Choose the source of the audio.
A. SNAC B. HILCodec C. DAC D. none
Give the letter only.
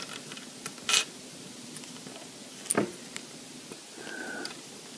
D